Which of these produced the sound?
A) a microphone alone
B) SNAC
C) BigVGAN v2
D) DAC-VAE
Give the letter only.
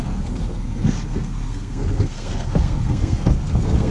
B